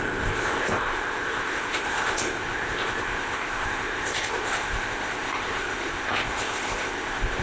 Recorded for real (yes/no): no